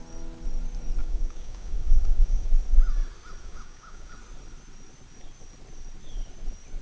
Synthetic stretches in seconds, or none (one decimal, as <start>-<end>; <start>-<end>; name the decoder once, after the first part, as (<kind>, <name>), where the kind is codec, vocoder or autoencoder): 1.0-2.5 (codec, DAC); 3.4-4.1